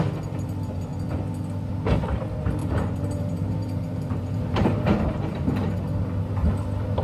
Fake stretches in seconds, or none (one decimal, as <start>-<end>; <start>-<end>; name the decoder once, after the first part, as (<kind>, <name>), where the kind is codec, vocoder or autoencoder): 2.6-5.7 (vocoder, BigVGAN v2)

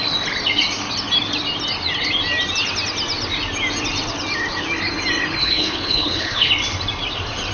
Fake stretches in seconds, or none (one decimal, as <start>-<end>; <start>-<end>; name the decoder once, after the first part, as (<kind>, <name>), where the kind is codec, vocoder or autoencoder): 5.4-6.5 (codec, HILCodec)

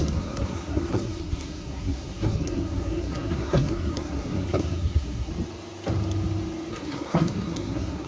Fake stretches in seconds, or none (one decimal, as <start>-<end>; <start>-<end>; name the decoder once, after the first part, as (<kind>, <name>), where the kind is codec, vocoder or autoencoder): 0.0-5.3 (codec, SNAC); 6.7-8.1

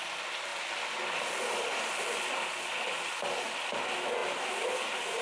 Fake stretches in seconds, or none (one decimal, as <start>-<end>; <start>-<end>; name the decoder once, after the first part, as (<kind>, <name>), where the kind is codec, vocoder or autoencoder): none

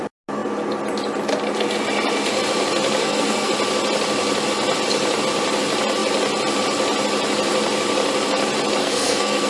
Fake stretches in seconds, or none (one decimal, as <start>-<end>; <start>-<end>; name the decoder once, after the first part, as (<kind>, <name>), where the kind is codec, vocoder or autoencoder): 3.0-3.5 (codec, SNAC); 8.8-9.5

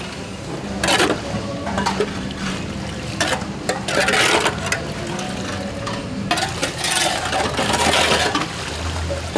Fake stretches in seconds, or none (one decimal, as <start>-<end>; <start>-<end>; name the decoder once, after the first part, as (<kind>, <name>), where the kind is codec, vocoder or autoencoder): 1.5-2.6 (vocoder, BigVGAN v2); 6.6-8.0

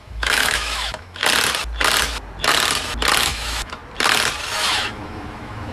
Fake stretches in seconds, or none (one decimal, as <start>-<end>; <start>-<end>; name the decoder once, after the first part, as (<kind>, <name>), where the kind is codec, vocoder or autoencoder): 0.0-1.2 (autoencoder, DAC-VAE); 3.2-3.8; 4.6-5.7